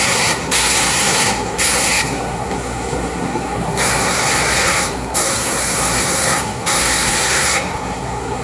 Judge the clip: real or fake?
fake